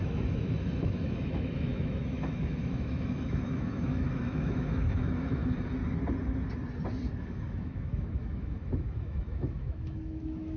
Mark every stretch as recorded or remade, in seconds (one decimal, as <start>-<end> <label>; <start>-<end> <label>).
0.0-5.4 remade; 5.4-7.2 recorded; 7.2-10.6 remade